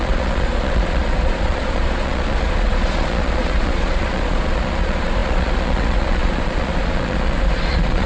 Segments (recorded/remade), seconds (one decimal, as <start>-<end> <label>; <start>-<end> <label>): 0.0-8.1 remade